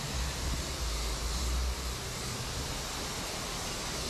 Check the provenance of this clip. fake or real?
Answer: real